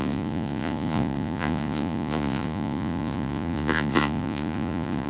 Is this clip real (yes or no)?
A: no